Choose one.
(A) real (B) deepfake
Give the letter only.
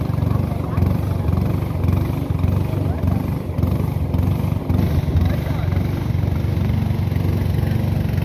A